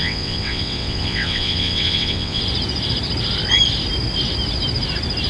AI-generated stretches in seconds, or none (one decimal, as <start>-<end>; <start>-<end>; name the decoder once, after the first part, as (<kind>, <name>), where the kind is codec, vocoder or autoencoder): 0.0-2.4 (vocoder, WaveNeXt)